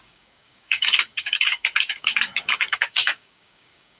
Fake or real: fake